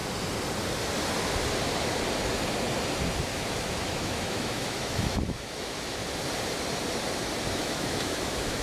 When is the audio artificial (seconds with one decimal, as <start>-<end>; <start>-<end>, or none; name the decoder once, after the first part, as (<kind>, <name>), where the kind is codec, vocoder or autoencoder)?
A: 3.2-6.0 (autoencoder, DAC-VAE); 7.5-8.6